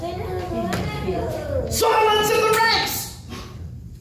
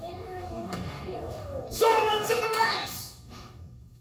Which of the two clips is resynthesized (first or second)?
second